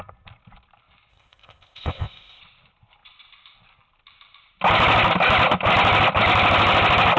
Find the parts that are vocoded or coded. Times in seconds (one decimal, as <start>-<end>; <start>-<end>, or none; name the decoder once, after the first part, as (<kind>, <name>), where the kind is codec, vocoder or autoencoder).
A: 1.1-2.4 (codec, ZipCodec)